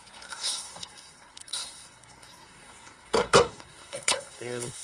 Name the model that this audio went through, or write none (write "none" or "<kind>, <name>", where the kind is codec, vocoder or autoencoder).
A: codec, SNAC